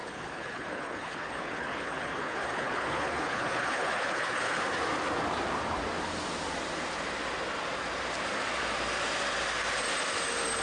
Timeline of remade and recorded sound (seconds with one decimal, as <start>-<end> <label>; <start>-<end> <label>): 0.0-4.6 remade; 4.6-10.6 recorded